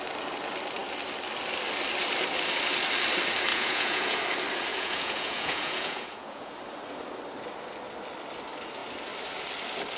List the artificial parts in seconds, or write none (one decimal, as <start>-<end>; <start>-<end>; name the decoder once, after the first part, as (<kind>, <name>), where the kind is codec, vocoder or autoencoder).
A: 3.5-4.2 (vocoder, Vocos); 4.7-6.5